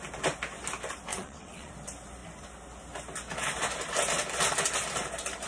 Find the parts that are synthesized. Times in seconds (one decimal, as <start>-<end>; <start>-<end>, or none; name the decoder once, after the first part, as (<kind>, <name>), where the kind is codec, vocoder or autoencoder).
1.1-1.7 (vocoder, WaveNeXt)